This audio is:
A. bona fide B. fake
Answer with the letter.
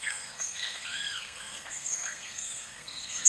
B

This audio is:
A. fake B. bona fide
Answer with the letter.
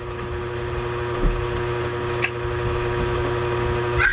B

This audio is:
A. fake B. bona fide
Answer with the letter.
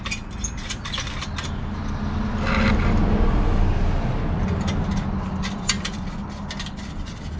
B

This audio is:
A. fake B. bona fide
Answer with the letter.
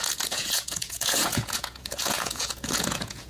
A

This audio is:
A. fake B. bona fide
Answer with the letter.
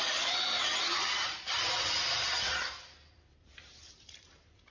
B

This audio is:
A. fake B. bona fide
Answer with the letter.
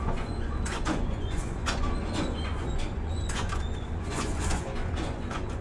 A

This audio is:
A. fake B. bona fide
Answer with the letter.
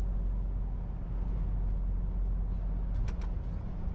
B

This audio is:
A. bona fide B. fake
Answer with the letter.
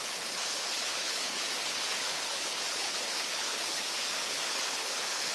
B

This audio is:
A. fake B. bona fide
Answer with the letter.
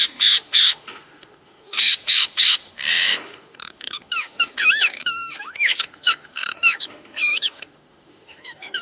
A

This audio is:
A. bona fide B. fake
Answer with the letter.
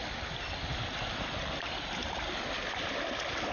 A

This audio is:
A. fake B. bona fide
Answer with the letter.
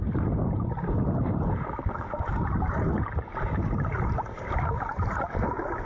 B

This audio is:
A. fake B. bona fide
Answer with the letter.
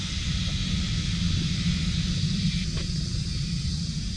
B